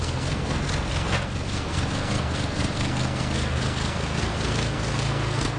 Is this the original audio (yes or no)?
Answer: no